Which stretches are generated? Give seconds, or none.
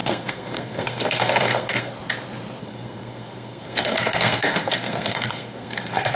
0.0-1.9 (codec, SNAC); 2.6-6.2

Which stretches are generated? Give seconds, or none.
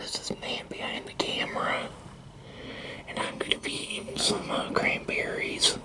3.2-4.5 (codec, SNAC)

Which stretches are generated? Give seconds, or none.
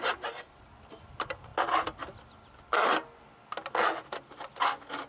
none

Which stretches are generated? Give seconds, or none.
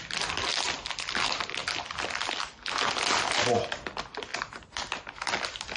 none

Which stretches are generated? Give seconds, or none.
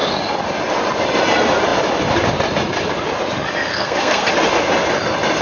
3.7-4.3 (codec, SNAC)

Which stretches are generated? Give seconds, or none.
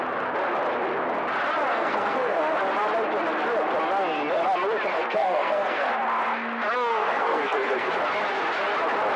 1.7-2.4 (codec, SNAC); 4.9-5.9; 6.9-7.9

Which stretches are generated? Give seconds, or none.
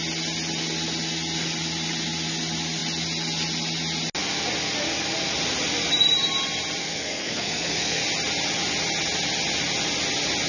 6.8-8.0 (codec, SNAC)